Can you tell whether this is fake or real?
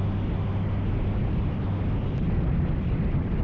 real